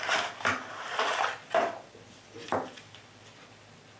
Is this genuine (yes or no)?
yes